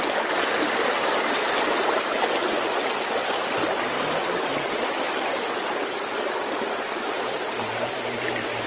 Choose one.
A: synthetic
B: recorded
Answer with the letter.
B